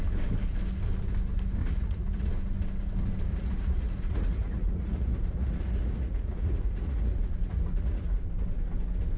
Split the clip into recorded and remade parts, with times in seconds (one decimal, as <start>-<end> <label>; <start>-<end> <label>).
0.0-1.6 recorded; 1.6-2.3 remade; 2.3-3.3 recorded; 3.3-8.2 remade; 8.2-9.2 recorded